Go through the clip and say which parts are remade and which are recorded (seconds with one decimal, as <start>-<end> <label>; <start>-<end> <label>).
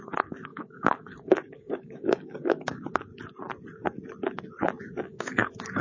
0.0-3.1 remade; 3.1-4.8 recorded; 4.8-5.8 remade